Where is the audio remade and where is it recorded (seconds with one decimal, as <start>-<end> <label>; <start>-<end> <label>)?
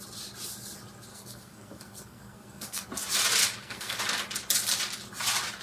0.0-1.1 recorded; 1.1-2.9 remade; 2.9-3.4 recorded; 3.4-4.0 remade; 4.0-5.6 recorded